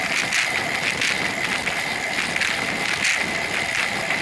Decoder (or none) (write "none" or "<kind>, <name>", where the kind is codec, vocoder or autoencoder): none